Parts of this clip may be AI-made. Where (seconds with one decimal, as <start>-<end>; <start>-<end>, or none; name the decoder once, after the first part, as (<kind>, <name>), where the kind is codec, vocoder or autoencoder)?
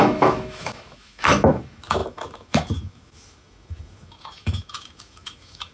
0.0-5.7 (autoencoder, DAC-VAE)